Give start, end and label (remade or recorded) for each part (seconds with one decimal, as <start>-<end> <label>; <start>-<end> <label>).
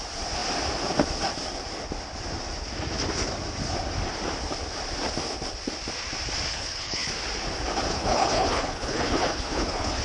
0.0-6.5 recorded; 6.5-7.1 remade; 7.1-7.9 recorded; 7.9-10.0 remade